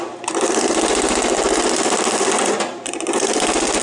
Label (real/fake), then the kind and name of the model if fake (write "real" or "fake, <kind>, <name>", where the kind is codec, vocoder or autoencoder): real